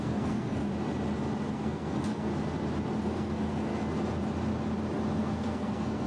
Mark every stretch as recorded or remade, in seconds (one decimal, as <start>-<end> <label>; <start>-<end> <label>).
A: 0.0-0.7 remade; 0.7-1.5 recorded; 1.5-2.3 remade; 2.3-3.0 recorded; 3.0-3.7 remade; 3.7-5.2 recorded; 5.2-6.1 remade